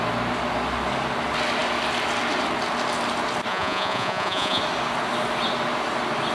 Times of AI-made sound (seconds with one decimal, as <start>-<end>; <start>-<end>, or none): 3.5-4.6